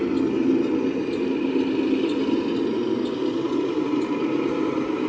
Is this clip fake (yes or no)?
no